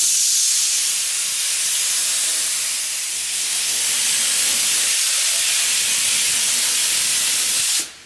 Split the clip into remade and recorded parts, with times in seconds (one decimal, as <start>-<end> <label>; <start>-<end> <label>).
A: 0.0-3.1 recorded; 3.1-3.8 remade; 3.8-8.1 recorded